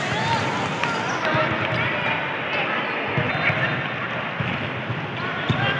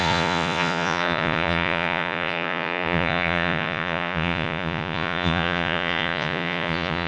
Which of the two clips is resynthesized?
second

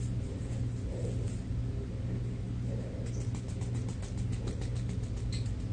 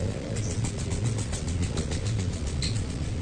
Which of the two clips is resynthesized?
second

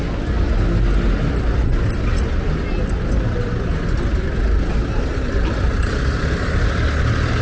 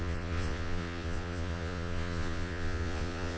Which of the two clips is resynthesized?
second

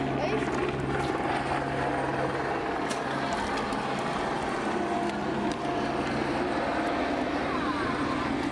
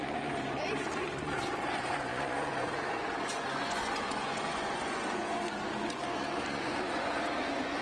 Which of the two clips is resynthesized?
second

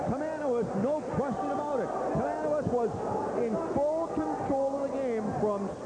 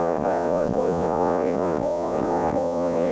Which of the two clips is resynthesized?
second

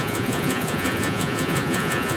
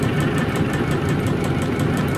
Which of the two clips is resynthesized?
first